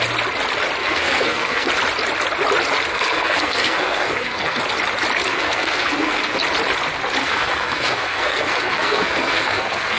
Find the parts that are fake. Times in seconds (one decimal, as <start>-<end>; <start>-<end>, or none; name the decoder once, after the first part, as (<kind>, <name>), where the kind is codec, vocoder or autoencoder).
0.8-1.7 (codec, SNAC); 2.9-4.6; 5.3-6.4; 7.2-10.0